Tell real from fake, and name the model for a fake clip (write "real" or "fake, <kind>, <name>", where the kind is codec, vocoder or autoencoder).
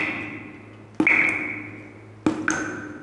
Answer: real